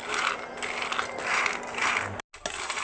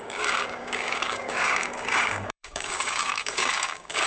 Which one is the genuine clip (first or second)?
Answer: first